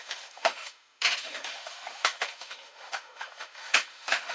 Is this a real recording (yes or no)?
no